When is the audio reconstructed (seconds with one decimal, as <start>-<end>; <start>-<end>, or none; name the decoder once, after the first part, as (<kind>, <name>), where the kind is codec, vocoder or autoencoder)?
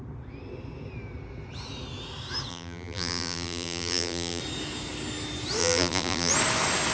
2.5-4.4 (vocoder, BigVGAN v2); 5.6-6.3